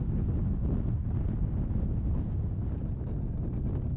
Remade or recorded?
recorded